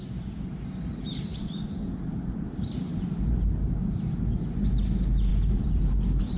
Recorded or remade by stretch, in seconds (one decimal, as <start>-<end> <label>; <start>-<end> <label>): 0.0-5.3 recorded; 5.3-5.9 remade; 5.9-6.4 recorded